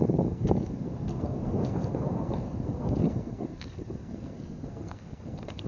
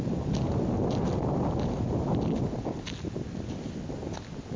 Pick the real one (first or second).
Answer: second